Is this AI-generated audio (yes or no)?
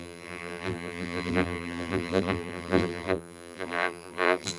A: yes